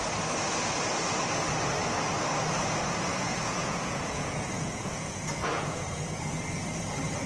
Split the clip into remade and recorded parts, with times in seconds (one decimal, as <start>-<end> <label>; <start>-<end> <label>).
0.0-3.1 recorded; 3.1-6.2 remade; 6.2-7.3 recorded